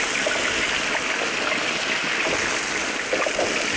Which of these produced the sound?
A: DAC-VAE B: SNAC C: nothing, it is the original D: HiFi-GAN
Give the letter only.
C